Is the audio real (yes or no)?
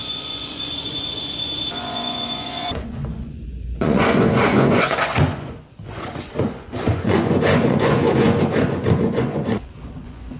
no